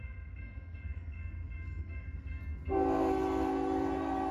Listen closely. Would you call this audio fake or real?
fake